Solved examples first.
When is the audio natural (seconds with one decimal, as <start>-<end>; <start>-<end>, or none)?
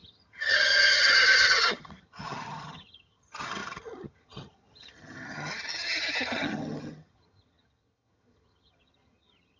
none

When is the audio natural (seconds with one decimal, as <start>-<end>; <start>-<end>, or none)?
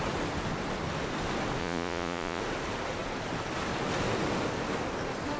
0.0-1.6; 2.4-5.4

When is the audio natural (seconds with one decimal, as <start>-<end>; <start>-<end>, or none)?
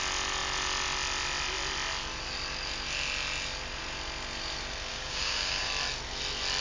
0.0-4.9; 5.7-6.6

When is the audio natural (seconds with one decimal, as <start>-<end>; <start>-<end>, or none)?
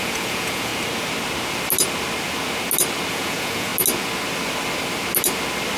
0.7-3.1; 3.7-5.8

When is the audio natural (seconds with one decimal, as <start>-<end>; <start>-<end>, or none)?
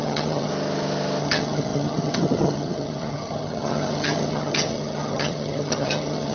0.5-1.2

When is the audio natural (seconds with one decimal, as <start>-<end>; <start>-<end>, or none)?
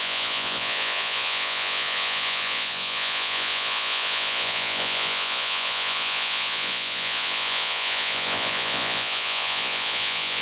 none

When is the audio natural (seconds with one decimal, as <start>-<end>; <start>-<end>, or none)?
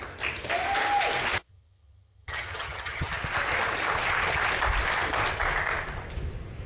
0.0-1.5; 3.2-6.7